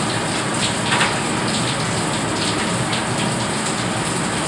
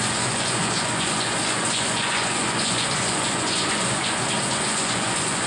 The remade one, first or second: second